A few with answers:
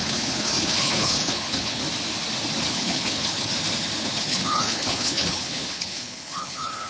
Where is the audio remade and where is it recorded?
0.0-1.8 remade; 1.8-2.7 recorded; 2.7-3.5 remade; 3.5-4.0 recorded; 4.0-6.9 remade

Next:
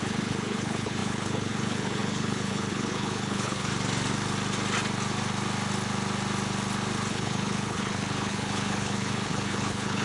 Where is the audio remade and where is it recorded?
0.0-3.7 remade; 3.7-7.1 recorded; 7.1-10.0 remade

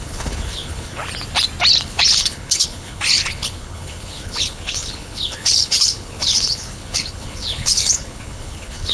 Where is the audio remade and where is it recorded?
0.0-1.0 remade; 1.0-1.8 recorded; 1.8-8.9 remade

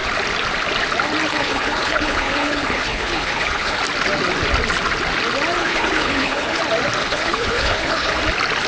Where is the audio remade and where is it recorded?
0.0-1.3 recorded; 1.3-3.8 remade; 3.8-5.6 recorded; 5.6-6.6 remade; 6.6-7.0 recorded; 7.0-8.2 remade; 8.2-8.7 recorded

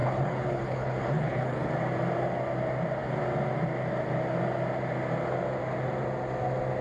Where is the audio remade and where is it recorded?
0.0-1.7 remade; 1.7-6.8 recorded